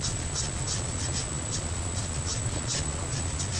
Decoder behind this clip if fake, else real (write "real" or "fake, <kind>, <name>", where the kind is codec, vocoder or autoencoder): fake, vocoder, Vocos